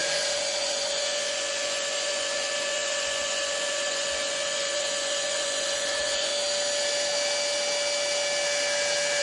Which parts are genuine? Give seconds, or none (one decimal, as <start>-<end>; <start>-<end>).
6.3-9.2